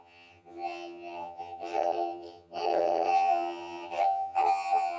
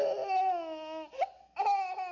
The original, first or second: second